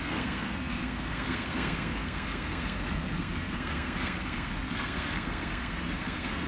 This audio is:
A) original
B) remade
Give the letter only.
B